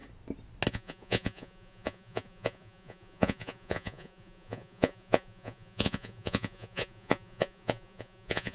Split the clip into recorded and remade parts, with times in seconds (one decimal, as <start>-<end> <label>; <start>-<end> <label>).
0.0-0.7 recorded; 0.7-8.5 remade